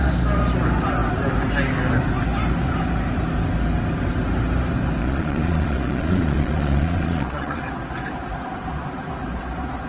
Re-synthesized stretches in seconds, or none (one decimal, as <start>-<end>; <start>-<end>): 5.0-7.6